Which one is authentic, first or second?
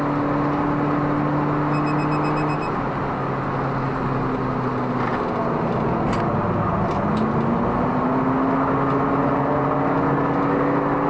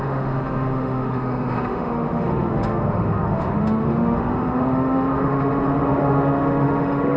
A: first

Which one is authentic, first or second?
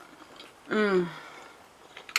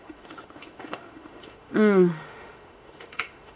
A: first